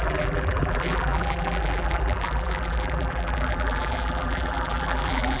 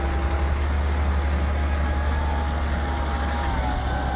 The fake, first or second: first